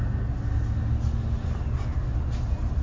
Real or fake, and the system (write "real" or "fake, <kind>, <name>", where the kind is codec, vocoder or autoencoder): real